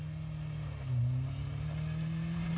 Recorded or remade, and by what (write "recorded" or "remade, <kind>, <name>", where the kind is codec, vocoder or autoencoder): recorded